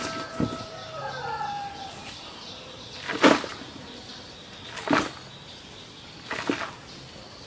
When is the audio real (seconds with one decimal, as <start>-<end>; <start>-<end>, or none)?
0.0-7.5

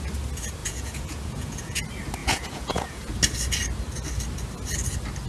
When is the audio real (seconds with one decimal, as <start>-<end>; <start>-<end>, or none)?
0.0-0.6; 1.8-2.2; 3.1-5.3

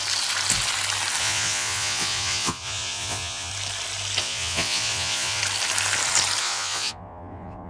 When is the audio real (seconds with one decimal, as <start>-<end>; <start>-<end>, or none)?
0.0-1.2; 3.5-4.2; 5.4-6.4

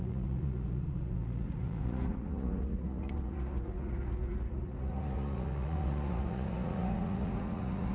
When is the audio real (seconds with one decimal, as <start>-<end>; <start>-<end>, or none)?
none

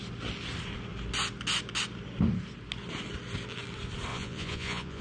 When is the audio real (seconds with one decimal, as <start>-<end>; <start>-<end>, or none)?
0.0-4.1